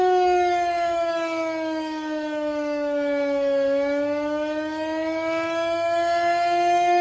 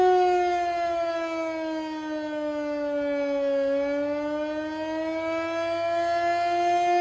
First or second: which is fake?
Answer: first